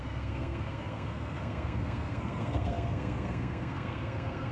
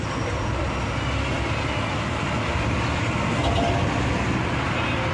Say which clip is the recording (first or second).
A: second